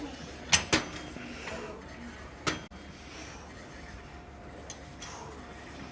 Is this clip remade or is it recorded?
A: recorded